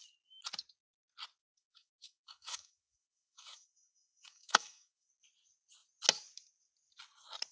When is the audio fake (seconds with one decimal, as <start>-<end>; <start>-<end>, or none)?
1.4-5.1